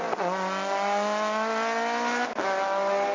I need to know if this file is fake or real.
real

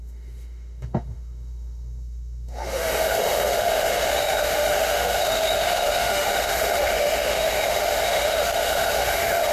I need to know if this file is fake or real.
fake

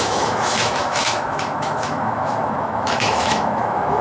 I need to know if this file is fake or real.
fake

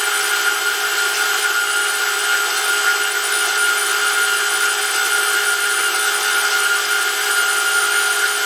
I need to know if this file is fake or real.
real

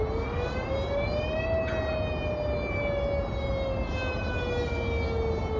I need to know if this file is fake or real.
real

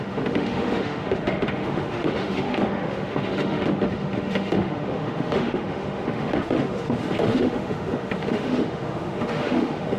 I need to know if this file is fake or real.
fake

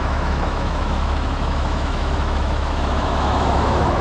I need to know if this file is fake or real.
fake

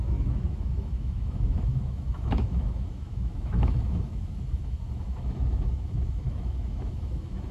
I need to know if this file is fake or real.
fake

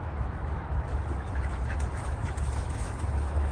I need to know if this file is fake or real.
fake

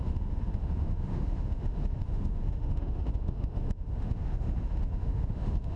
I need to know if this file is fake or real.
fake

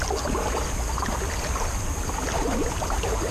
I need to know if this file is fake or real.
real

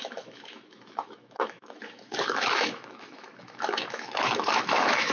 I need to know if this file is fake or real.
fake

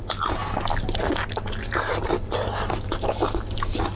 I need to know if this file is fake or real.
real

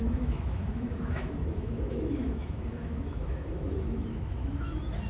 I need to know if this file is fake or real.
fake